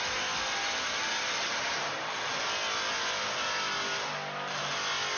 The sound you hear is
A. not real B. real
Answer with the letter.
B